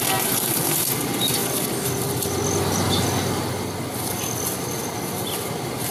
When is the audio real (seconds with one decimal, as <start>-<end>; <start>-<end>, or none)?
0.0-1.4; 4.9-5.9